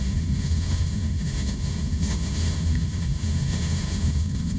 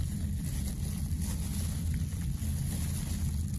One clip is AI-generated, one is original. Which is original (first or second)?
second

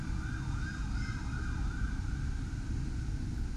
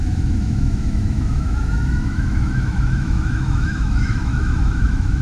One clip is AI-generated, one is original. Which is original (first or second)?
first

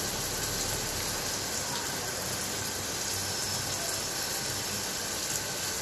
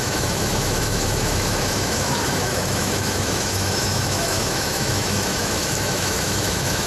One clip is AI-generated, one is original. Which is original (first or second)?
first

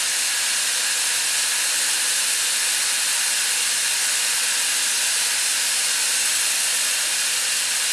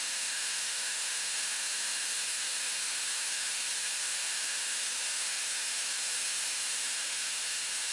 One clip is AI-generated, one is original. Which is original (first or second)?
first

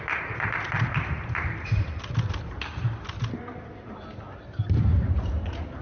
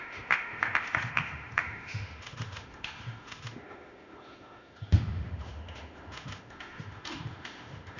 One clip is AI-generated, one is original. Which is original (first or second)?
first